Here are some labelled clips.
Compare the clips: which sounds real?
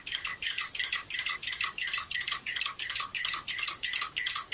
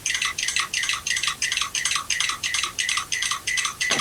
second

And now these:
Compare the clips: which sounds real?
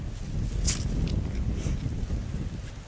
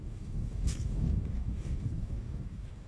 first